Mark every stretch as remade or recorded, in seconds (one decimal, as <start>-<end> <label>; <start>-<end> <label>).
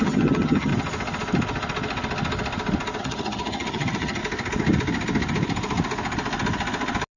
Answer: 0.0-0.7 remade; 0.7-3.0 recorded; 3.0-4.2 remade; 4.2-7.2 recorded